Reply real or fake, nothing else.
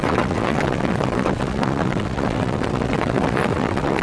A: fake